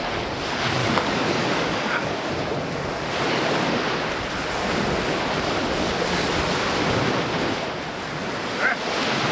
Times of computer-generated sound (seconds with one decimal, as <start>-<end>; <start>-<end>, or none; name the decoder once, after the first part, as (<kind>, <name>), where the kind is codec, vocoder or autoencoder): 0.8-2.3 (codec, DAC)